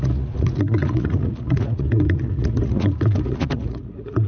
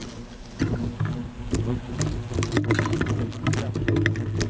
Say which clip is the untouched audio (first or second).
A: second